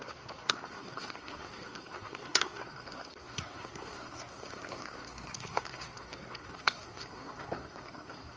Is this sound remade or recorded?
remade